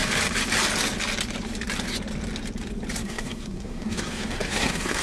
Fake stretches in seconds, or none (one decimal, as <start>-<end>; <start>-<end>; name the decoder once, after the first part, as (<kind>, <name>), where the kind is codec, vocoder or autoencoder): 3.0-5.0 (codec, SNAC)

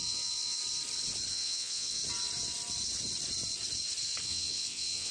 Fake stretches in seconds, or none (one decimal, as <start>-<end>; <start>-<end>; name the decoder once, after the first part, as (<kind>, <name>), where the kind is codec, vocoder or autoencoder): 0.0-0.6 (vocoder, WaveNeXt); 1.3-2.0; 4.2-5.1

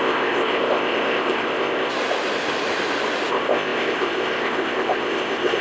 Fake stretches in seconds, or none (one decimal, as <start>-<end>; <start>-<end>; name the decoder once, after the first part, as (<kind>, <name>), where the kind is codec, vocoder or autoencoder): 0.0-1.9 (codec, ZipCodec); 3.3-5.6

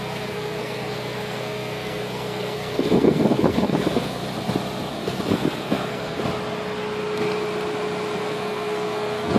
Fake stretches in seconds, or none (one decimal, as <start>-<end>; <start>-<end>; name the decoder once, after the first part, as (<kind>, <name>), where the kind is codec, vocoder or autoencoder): 0.0-4.2 (codec, SNAC); 4.9-6.2; 8.2-9.4

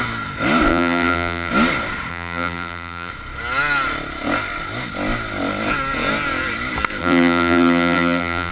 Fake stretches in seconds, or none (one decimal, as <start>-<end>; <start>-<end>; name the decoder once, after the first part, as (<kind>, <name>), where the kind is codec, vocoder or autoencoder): 0.7-1.5 (vocoder, BigVGAN v2); 2.1-3.1; 7.0-8.5

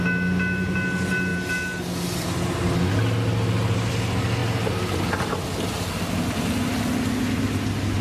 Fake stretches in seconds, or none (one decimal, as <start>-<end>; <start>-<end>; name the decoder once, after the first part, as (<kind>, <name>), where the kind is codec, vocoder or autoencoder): none

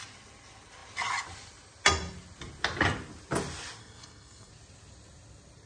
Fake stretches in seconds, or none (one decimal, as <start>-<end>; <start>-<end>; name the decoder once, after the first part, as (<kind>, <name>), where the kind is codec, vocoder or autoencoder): 3.8-4.5 (codec, SNAC)

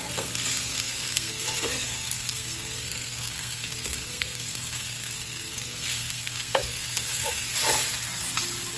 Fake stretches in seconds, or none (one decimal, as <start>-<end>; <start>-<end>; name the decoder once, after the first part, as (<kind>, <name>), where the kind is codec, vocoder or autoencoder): 0.0-7.5 (codec, SNAC)